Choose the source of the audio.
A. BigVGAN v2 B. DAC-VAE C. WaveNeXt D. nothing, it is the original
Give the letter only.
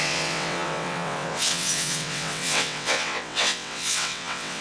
C